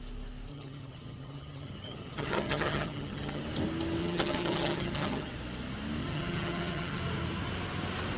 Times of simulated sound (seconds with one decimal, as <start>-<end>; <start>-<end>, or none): 0.5-3.4; 4.0-5.3; 6.0-7.0